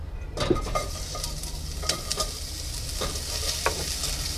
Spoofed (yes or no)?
no